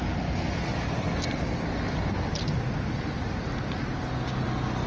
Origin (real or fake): real